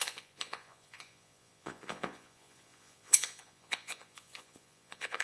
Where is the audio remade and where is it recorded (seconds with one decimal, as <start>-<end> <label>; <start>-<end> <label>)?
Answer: 0.0-5.2 remade